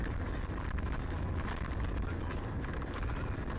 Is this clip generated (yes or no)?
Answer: no